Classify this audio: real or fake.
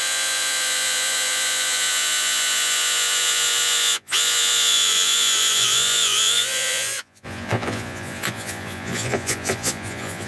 fake